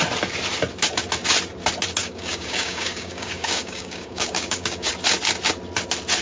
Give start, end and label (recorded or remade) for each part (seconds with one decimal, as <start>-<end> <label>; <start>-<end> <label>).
0.0-2.0 recorded; 2.0-4.9 remade; 4.9-6.2 recorded